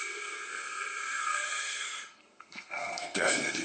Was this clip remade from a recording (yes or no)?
yes